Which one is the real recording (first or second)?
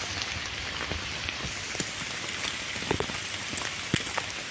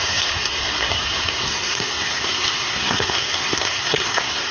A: first